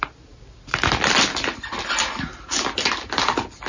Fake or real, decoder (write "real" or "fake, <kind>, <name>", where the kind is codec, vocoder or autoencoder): real